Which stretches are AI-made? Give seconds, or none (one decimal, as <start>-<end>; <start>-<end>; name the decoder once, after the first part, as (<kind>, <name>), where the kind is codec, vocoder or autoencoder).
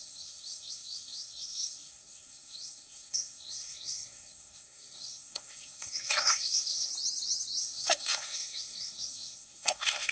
0.0-6.9 (codec, SNAC); 7.6-10.1